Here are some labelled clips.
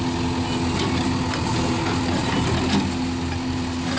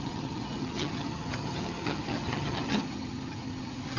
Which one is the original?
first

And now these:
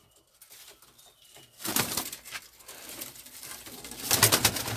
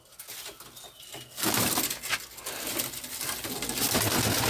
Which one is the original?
second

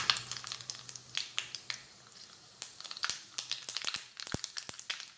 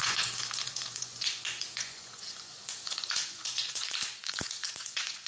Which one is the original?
first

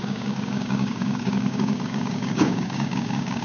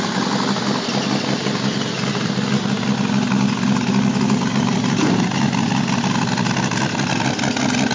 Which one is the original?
second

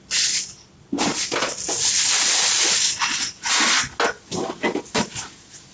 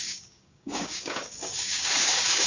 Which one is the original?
first